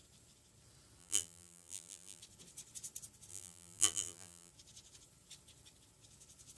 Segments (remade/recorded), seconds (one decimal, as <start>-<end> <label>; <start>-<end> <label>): 0.0-1.0 recorded; 1.0-2.2 remade; 2.2-3.3 recorded; 3.3-4.5 remade; 4.5-6.6 recorded